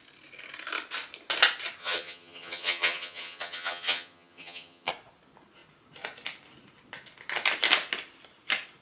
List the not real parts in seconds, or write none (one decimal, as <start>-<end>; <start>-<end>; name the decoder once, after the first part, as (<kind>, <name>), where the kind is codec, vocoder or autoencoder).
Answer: 1.8-4.9 (vocoder, HiFi-GAN)